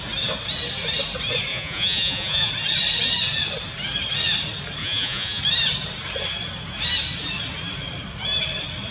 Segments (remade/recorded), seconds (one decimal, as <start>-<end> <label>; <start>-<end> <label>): 0.0-1.5 recorded; 1.5-2.5 remade; 2.5-4.8 recorded; 4.8-5.4 remade; 5.4-8.9 recorded